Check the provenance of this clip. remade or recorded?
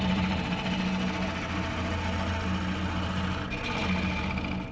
recorded